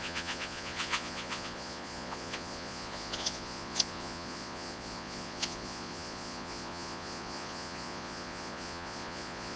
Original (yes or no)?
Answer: no